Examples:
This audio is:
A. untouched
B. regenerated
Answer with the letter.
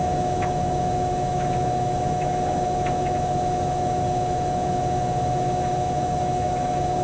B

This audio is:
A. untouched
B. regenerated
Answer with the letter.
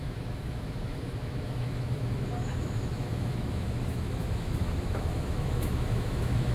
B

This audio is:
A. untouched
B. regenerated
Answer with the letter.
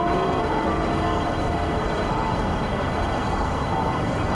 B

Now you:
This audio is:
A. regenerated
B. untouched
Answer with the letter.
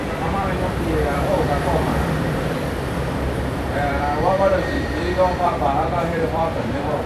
A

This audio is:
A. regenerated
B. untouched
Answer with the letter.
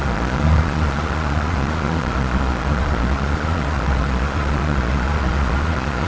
A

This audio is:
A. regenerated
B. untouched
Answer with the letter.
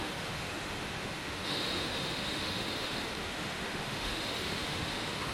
A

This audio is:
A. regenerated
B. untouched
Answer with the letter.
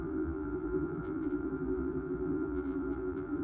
A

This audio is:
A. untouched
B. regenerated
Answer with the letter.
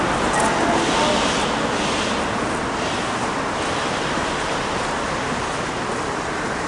A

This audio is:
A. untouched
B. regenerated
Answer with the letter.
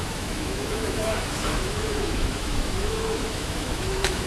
B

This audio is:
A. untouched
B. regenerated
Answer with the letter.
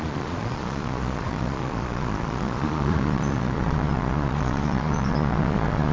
B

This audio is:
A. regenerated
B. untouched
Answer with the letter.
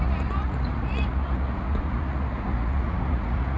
A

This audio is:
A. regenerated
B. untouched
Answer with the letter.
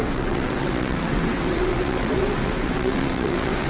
A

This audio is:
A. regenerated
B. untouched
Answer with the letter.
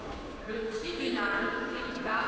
A